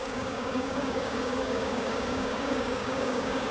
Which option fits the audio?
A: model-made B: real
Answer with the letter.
A